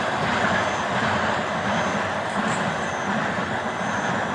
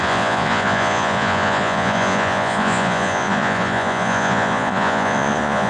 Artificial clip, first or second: second